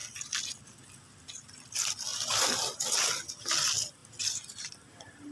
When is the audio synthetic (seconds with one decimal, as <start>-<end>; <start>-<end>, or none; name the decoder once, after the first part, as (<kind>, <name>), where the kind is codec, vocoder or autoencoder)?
none

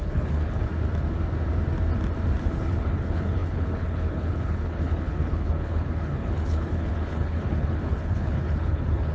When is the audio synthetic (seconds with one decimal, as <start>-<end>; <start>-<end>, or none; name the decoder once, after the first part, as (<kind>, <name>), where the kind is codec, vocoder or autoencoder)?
0.0-0.7 (codec, HILCodec); 2.4-9.1